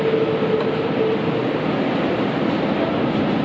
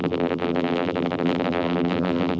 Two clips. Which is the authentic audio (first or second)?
first